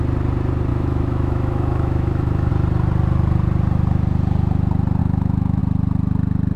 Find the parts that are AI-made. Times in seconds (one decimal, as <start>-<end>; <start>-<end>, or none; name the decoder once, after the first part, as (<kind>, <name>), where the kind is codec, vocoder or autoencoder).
0.7-2.5 (autoencoder, DAC-VAE); 5.0-5.6